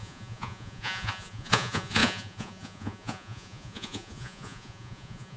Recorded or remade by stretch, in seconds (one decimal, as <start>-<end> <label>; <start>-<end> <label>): 0.0-5.4 remade